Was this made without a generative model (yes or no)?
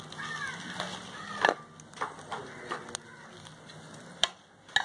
yes